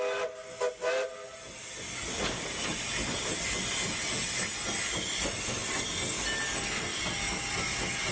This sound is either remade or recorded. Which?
recorded